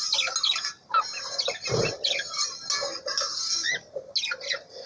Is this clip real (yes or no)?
yes